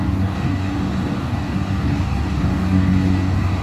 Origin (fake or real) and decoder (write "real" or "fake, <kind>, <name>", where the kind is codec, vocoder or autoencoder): fake, codec, DAC